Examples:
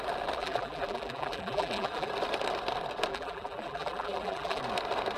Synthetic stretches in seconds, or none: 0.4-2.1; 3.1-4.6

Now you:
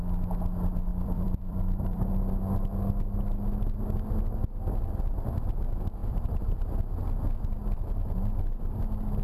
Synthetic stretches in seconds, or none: 0.9-2.1; 6.0-6.7

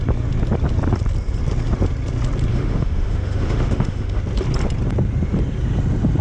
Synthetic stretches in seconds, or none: 2.5-4.2

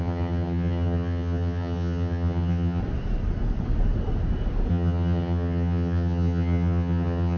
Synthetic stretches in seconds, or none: 0.0-2.8; 4.7-7.4

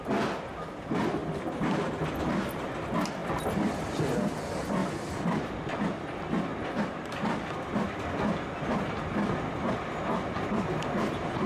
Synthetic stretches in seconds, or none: none